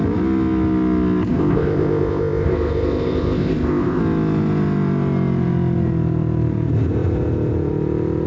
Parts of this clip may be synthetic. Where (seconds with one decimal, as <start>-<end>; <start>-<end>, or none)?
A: 1.3-4.0